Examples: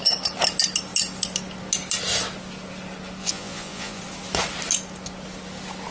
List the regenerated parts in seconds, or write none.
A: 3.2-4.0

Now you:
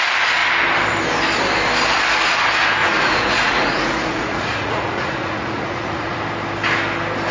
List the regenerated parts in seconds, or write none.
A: 2.8-6.2